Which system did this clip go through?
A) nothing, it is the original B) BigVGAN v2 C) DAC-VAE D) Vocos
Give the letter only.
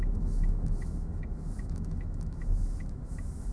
C